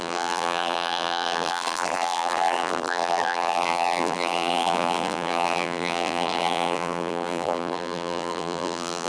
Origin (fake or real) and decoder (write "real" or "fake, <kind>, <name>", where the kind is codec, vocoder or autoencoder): fake, vocoder, BigVGAN v2